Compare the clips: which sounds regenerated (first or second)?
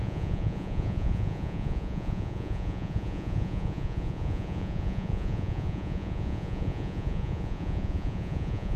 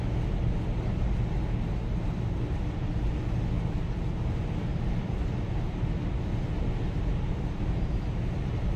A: first